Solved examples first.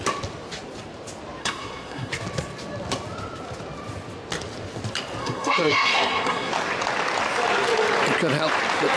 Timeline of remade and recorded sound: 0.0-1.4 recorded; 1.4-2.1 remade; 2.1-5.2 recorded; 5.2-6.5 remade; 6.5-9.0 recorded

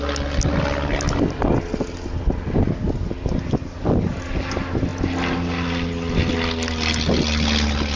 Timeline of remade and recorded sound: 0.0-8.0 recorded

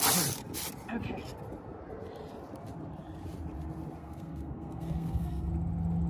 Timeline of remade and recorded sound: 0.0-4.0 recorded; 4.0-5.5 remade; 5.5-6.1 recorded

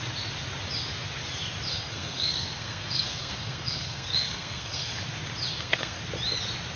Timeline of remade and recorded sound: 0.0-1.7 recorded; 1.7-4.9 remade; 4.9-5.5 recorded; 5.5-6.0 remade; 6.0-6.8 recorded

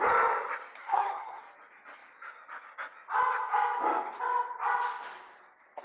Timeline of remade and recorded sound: 0.0-0.8 recorded; 0.8-1.4 remade; 1.4-5.8 recorded

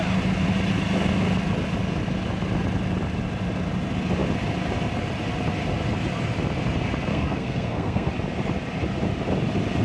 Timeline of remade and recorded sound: 0.0-7.1 recorded; 7.1-8.1 remade; 8.1-9.8 recorded

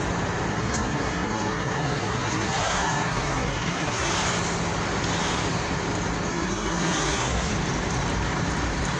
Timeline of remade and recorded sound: 0.0-0.5 recorded; 0.5-4.1 remade; 4.1-6.3 recorded; 6.3-7.5 remade; 7.5-9.0 recorded